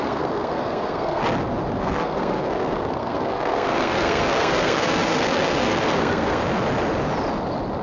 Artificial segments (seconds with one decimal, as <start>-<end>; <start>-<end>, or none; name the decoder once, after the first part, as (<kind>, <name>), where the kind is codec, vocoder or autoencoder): 0.0-1.2 (codec, SNAC); 1.8-6.4